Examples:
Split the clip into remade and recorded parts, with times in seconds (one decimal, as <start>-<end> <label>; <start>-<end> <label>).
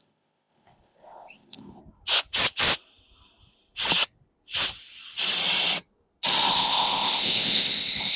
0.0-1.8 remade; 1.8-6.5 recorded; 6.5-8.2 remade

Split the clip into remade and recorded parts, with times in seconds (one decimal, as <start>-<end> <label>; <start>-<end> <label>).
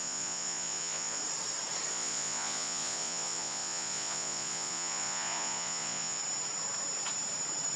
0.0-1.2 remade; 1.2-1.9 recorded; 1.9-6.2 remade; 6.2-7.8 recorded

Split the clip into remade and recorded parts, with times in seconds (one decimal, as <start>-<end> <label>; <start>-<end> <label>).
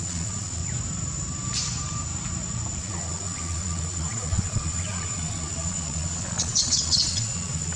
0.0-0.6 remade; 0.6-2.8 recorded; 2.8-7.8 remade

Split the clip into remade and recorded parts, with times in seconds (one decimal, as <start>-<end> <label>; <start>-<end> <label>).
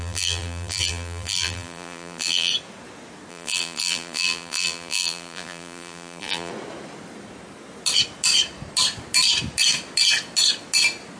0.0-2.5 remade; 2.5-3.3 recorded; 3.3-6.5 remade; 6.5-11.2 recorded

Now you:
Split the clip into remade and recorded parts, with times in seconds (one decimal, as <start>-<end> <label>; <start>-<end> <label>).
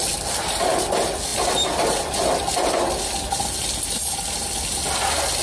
0.0-5.4 recorded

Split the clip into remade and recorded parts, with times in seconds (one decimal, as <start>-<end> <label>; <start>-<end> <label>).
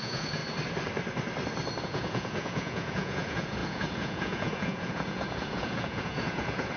0.0-0.4 remade; 0.4-1.8 recorded; 1.8-6.8 remade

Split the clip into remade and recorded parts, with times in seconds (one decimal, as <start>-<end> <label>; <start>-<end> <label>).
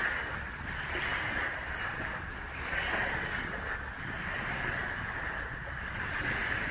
0.0-6.7 recorded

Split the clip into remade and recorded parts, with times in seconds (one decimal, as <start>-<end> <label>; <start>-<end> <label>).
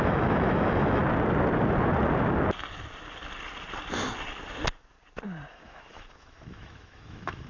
0.0-1.0 remade; 1.0-5.5 recorded; 5.5-7.5 remade